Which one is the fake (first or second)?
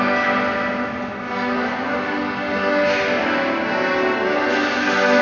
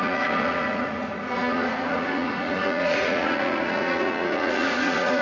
second